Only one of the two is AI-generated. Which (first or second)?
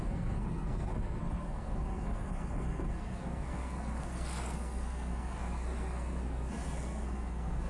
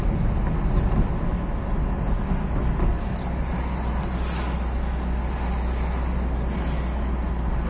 first